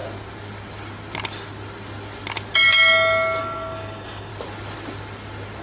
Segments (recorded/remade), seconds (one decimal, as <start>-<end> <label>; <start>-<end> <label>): 0.0-3.4 recorded; 3.4-4.3 remade; 4.3-5.6 recorded